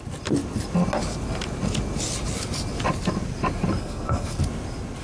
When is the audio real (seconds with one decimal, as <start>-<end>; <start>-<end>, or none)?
0.0-3.8; 4.4-5.0

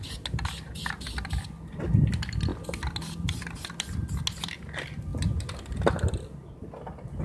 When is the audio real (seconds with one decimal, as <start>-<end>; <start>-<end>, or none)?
0.0-7.2

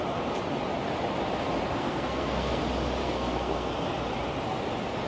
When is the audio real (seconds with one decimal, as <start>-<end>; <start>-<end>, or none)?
0.0-1.7; 2.6-3.0; 3.7-5.1

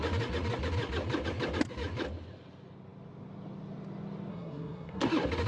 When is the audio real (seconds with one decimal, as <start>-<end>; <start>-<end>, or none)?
0.0-4.3; 5.0-5.5

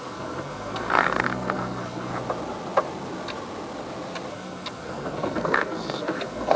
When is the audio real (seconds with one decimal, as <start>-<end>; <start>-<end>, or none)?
2.1-4.3

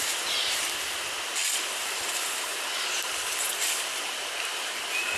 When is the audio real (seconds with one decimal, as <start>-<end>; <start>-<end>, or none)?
0.0-5.2

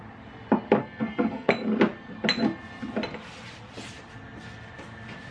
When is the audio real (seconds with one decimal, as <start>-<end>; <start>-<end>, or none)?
0.0-0.8; 1.5-5.3